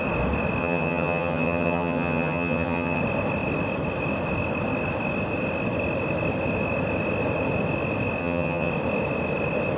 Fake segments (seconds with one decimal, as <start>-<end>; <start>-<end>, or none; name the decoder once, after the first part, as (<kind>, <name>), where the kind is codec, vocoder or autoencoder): 0.6-3.0 (vocoder, HiFi-GAN); 8.2-8.7